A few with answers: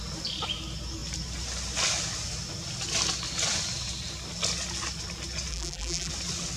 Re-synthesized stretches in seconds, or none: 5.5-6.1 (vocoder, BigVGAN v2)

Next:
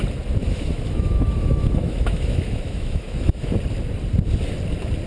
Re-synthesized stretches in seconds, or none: 0.4-3.5 (autoencoder, DAC-VAE)

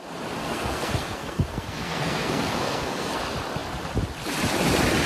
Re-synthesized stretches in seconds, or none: 0.4-3.2 (codec, SNAC)

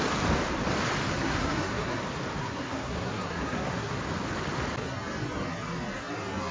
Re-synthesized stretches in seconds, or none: 1.1-2.0 (codec, SNAC); 2.4-4.0

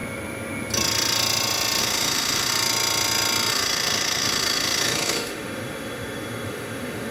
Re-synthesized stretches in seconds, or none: 1.8-2.5 (autoencoder, DAC-VAE); 3.5-7.1